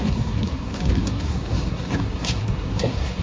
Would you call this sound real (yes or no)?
no